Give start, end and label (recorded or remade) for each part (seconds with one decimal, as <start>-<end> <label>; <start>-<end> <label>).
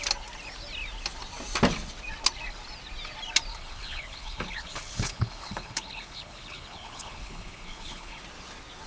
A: 0.0-3.5 recorded; 3.5-8.2 remade; 8.2-8.9 recorded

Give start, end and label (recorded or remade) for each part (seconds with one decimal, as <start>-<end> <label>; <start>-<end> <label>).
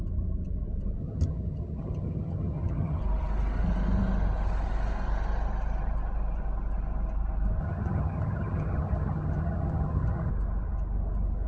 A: 0.0-1.0 recorded; 1.0-3.0 remade; 3.0-7.6 recorded; 7.6-10.3 remade; 10.3-11.5 recorded